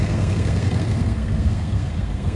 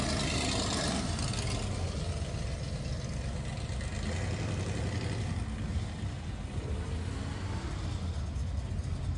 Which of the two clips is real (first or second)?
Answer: second